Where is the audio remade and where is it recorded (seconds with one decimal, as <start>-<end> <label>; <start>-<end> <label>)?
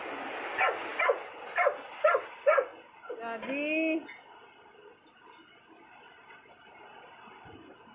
0.0-7.9 recorded